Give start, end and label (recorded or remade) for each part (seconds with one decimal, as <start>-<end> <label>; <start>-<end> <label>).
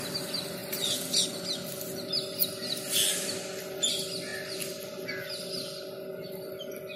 0.0-7.0 recorded